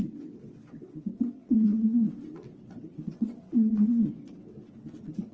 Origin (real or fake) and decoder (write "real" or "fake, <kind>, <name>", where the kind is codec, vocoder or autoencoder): fake, vocoder, WaveNeXt